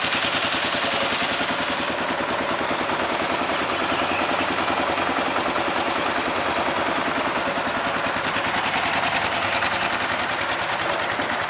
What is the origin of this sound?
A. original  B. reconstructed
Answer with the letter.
A